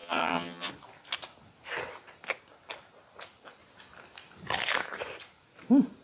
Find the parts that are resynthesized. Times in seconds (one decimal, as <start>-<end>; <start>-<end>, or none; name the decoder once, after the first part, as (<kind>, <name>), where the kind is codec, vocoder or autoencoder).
0.0-0.7 (vocoder, HiFi-GAN)